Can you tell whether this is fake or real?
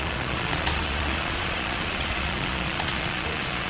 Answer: fake